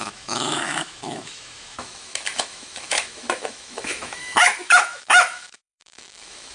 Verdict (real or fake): fake